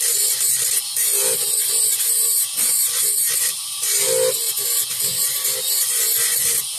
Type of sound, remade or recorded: recorded